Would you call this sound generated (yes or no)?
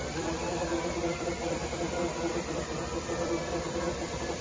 yes